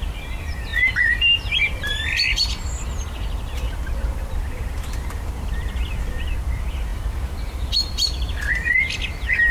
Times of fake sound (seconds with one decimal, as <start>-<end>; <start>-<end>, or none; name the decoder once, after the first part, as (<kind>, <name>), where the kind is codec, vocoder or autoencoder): 0.0-9.5 (vocoder, BigVGAN v2)

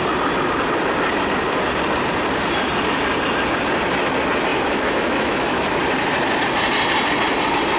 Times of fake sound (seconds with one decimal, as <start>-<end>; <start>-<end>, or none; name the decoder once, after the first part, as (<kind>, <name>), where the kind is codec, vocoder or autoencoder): 4.5-5.8 (autoencoder, DAC-VAE)

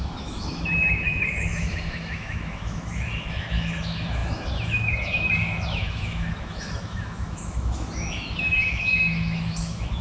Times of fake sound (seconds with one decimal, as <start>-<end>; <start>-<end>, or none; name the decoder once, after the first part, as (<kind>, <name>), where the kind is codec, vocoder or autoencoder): 0.0-10.0 (autoencoder, DAC-VAE)

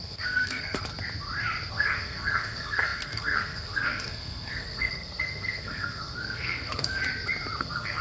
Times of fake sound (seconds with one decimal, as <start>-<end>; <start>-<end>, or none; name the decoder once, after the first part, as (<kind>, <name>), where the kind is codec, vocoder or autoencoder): 0.0-0.9 (codec, SNAC); 1.7-7.0; 7.6-8.0

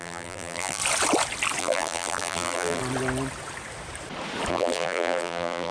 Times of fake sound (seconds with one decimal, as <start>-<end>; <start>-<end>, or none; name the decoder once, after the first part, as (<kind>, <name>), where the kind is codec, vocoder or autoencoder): 0.0-0.8 (vocoder, BigVGAN v2); 1.6-2.8; 4.5-5.7